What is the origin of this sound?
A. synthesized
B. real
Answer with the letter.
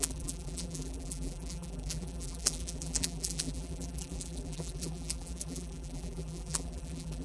A